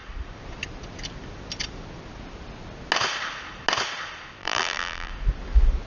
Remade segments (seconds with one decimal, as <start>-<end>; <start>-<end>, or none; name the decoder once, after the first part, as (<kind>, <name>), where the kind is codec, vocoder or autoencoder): 4.4-5.1 (vocoder, BigVGAN v2)